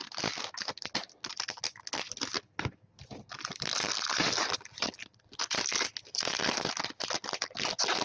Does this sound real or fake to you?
real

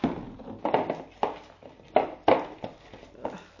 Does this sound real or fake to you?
real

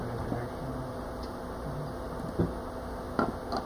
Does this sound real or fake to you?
real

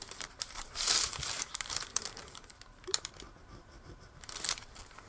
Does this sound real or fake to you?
fake